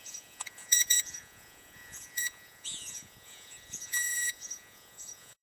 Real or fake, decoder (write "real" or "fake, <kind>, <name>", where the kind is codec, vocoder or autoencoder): fake, vocoder, Vocos